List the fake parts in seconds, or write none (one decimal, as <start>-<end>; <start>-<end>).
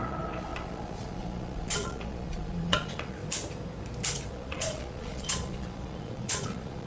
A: 0.0-3.2; 4.3-6.9